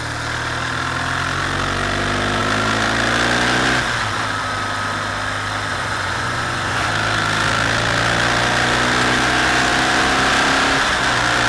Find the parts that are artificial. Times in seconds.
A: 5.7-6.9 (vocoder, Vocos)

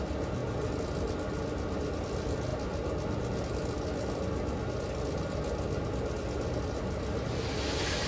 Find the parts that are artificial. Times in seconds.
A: none

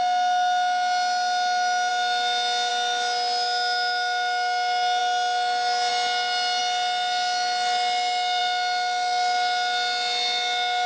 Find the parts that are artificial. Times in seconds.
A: none

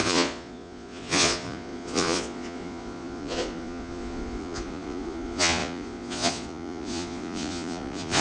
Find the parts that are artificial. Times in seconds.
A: 0.0-8.2 (vocoder, Vocos)

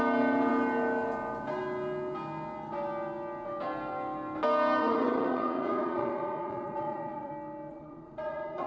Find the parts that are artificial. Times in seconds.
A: 4.8-7.3 (vocoder, Vocos); 7.7-8.7